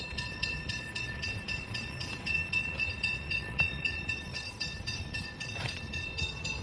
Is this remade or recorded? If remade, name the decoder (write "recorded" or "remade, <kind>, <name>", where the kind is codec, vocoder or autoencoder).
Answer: remade, vocoder, Vocos